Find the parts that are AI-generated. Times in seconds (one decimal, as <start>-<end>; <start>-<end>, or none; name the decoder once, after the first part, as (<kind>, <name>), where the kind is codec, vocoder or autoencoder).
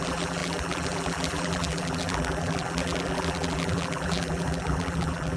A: 0.0-5.4 (vocoder, BigVGAN v2)